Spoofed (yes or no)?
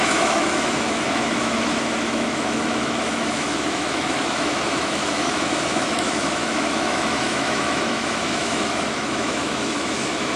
yes